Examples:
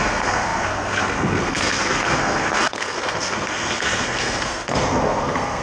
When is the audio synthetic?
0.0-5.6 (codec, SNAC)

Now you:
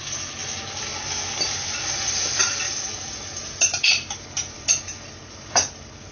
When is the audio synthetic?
none